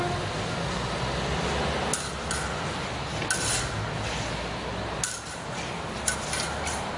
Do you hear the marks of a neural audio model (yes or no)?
no